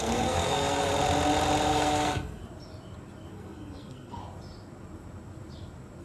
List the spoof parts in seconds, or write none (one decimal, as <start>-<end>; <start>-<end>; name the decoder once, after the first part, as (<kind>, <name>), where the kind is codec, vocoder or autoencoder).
0.0-0.9 (codec, SNAC); 1.7-2.4; 3.3-4.2